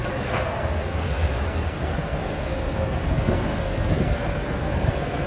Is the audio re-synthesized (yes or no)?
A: yes